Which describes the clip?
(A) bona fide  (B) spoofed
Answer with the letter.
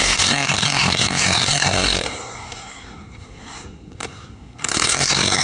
B